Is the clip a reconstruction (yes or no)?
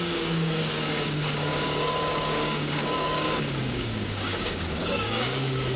yes